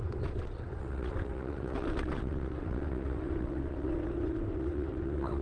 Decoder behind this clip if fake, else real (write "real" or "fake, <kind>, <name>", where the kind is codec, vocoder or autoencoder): fake, vocoder, WaveNeXt